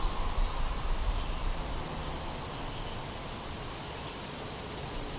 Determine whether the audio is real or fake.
real